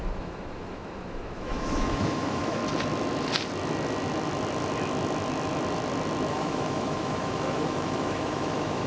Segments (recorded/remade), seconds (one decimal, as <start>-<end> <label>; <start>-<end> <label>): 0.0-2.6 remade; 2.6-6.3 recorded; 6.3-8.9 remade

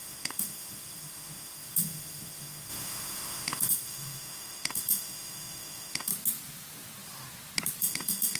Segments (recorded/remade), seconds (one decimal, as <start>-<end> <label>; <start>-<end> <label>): 0.0-6.1 remade; 6.1-7.8 recorded; 7.8-8.4 remade

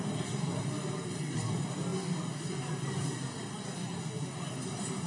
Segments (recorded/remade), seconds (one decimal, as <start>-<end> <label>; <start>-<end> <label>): 0.0-5.1 recorded

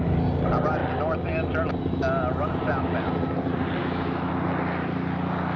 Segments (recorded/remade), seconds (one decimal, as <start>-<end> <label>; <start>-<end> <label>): 0.0-3.8 recorded; 3.8-4.3 remade; 4.3-5.6 recorded